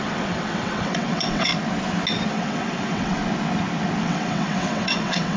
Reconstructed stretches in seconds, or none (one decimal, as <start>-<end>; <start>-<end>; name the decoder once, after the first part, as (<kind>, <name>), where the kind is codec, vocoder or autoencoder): 0.0-1.5 (vocoder, WaveNeXt); 2.3-3.2; 4.0-5.4